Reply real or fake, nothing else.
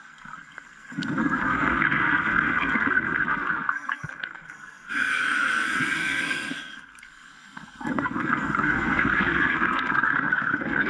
fake